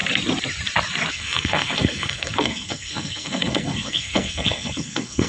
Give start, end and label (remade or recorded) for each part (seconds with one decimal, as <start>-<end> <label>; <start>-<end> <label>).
0.0-1.1 recorded; 1.1-5.3 remade